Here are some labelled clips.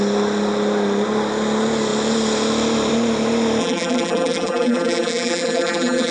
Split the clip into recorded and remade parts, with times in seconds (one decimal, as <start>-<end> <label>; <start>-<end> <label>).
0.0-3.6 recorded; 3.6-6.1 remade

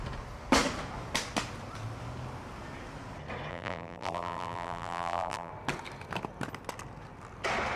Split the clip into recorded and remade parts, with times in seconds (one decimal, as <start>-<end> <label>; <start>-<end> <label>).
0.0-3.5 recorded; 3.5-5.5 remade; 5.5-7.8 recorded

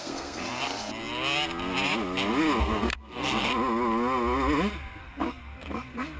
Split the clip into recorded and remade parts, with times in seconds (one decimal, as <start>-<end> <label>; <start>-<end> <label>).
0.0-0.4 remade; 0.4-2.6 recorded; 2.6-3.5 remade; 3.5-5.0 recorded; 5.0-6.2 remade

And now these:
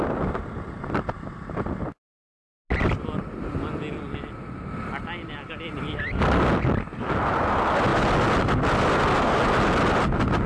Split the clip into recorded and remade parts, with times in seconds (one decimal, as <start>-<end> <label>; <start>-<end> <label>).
0.0-10.5 recorded

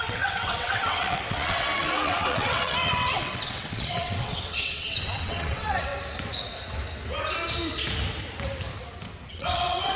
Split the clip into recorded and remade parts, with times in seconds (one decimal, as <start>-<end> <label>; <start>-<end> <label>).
0.0-5.9 remade; 5.9-9.3 recorded; 9.3-10.0 remade

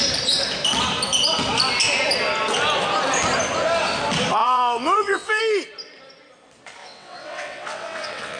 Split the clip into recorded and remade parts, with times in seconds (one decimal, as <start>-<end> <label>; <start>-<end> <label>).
0.0-4.4 recorded; 4.4-5.4 remade; 5.4-6.8 recorded; 6.8-8.4 remade

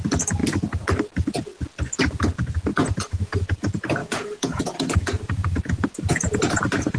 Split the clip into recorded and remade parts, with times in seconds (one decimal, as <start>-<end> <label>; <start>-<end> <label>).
0.0-2.7 recorded; 2.7-3.6 remade; 3.6-4.0 recorded; 4.0-6.6 remade; 6.6-7.0 recorded

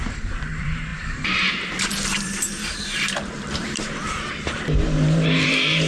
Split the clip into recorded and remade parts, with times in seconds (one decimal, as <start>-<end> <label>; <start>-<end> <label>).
0.0-5.9 remade